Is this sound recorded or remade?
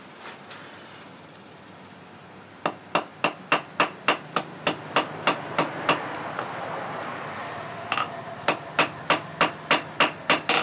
recorded